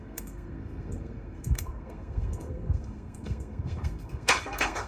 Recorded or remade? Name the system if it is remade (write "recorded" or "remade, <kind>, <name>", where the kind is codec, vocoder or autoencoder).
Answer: remade, codec, SNAC